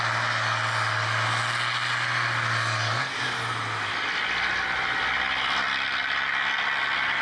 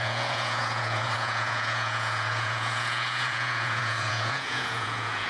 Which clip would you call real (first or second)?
first